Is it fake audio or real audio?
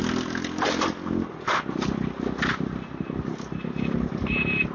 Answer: real